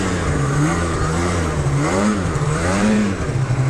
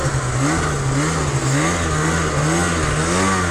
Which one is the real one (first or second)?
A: second